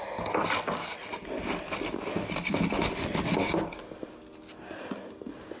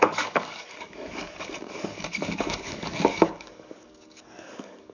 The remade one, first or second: second